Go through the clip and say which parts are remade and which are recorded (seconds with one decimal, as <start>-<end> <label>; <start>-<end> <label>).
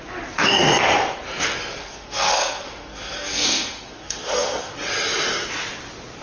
0.0-1.8 recorded; 1.8-4.7 remade; 4.7-6.2 recorded